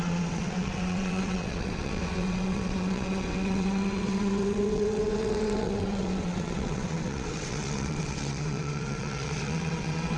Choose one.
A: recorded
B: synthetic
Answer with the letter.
B